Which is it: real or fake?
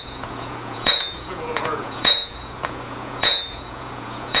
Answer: fake